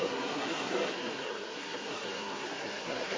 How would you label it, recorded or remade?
remade